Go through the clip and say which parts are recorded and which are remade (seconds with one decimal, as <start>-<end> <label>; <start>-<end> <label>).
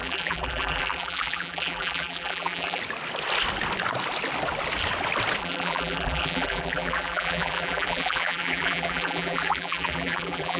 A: 0.0-2.8 remade; 2.8-5.4 recorded; 5.4-10.6 remade